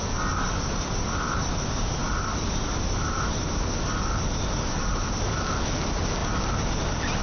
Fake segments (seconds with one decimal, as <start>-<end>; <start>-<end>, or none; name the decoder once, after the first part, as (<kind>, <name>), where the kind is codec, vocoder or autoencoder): none